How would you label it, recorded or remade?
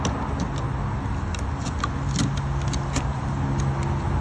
recorded